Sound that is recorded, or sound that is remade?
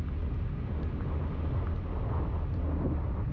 recorded